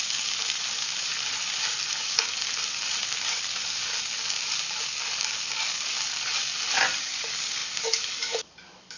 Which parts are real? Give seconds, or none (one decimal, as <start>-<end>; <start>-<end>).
1.1-1.9; 6.5-7.0